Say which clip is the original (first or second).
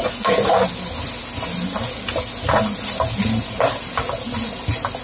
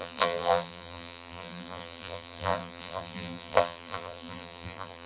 first